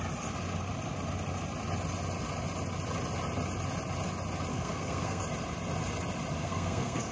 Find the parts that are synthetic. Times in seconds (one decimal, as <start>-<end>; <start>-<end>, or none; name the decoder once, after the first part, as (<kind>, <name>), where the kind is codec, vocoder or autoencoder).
4.5-5.2 (codec, SNAC); 6.4-7.1